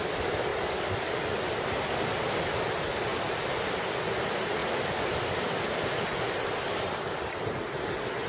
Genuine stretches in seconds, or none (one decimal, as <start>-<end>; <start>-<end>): 0.0-3.1; 3.8-4.6; 7.7-8.3

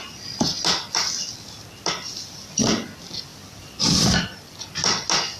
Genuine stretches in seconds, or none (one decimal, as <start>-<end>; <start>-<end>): 0.0-3.3; 4.2-5.4

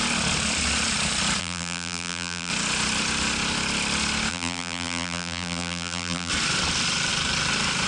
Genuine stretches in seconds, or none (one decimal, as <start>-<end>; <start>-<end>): 0.0-1.4; 2.5-4.3; 6.3-7.9

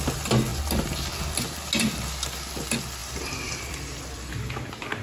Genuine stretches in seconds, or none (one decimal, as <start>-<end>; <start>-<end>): 0.0-3.0; 4.3-5.0

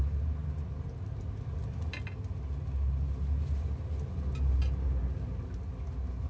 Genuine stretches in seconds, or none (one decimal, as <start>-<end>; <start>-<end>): 0.0-6.3

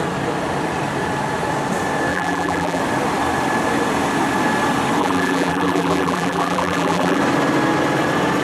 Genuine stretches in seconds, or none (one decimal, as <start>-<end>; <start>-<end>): 0.0-2.1; 2.8-5.0; 7.2-8.4

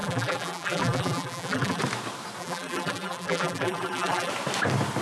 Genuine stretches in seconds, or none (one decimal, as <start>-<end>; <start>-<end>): 1.8-2.4; 4.3-5.0